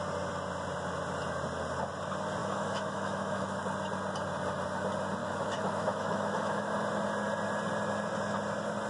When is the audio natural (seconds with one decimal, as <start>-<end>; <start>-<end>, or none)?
0.0-2.4; 3.6-5.2; 6.7-8.9